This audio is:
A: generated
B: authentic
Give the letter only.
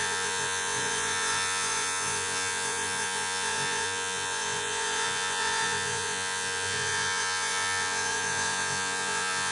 A